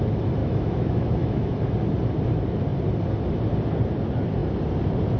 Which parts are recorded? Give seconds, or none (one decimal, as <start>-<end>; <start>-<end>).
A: 0.0-0.4; 1.7-5.2